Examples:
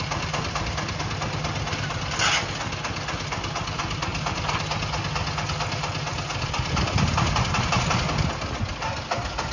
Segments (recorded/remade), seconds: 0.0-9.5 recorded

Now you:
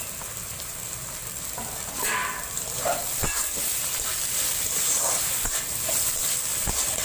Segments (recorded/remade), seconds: 0.0-6.5 remade; 6.5-7.0 recorded

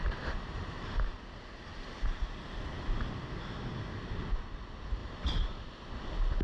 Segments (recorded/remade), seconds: 0.0-1.2 remade; 1.2-5.0 recorded; 5.0-5.9 remade; 5.9-6.4 recorded

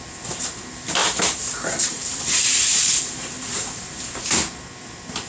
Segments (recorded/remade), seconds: 0.0-1.0 recorded; 1.0-4.2 remade; 4.2-5.3 recorded

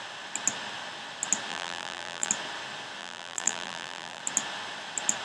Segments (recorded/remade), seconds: 0.0-1.5 recorded; 1.5-2.3 remade; 2.3-3.0 recorded; 3.0-4.2 remade; 4.2-5.2 recorded

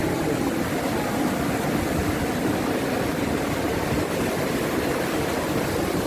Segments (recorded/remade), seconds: 0.0-6.1 recorded

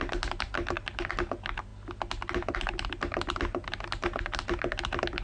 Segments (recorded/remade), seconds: 0.0-5.2 recorded